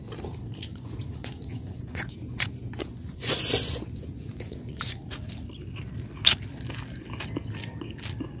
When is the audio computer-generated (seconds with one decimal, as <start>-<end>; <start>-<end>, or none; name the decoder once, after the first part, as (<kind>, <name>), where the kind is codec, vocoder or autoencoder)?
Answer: 0.7-5.0 (vocoder, Vocos)